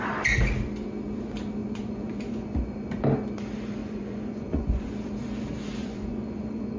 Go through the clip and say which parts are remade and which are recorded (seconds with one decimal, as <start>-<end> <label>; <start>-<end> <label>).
0.0-1.6 recorded; 1.6-2.6 remade; 2.6-3.8 recorded; 3.8-4.9 remade; 4.9-5.8 recorded; 5.8-6.8 remade